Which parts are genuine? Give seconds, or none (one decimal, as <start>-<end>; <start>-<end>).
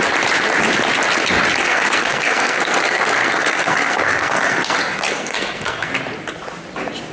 0.0-1.6; 5.9-7.1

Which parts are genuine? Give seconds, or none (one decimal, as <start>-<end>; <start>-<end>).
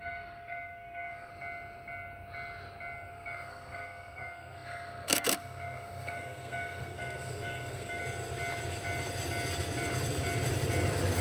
1.3-3.1; 8.0-11.2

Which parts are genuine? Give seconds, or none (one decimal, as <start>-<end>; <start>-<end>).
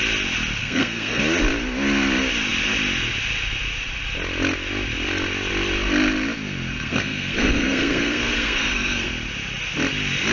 0.0-0.6; 1.2-6.7; 9.1-10.3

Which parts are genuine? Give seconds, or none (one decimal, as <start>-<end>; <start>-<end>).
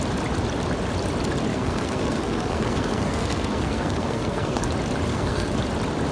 0.0-1.5; 4.6-5.1; 5.6-6.1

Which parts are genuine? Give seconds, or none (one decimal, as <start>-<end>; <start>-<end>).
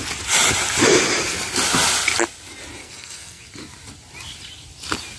0.0-2.8; 3.4-5.2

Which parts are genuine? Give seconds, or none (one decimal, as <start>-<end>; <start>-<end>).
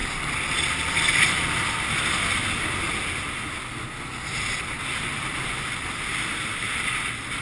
0.0-7.4